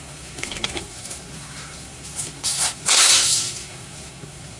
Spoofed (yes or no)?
yes